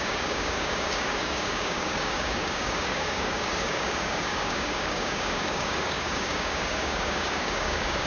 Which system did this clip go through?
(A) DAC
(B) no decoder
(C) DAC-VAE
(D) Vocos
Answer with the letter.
A